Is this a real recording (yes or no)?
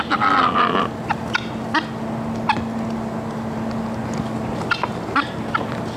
yes